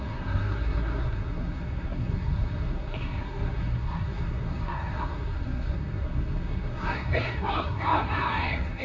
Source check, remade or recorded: remade